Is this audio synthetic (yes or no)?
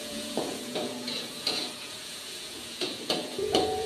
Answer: yes